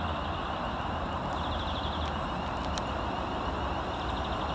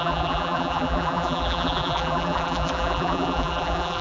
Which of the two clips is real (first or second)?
first